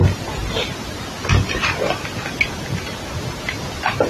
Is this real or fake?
real